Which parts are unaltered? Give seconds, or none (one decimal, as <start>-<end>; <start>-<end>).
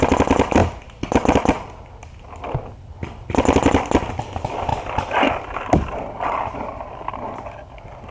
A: 4.7-5.4